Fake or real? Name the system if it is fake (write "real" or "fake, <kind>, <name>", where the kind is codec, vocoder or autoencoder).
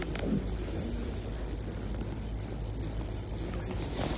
real